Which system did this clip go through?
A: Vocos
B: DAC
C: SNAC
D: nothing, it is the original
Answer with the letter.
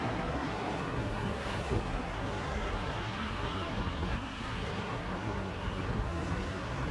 C